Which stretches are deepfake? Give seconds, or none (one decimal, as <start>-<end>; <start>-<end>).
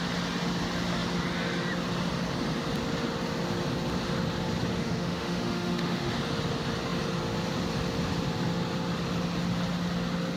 4.7-6.1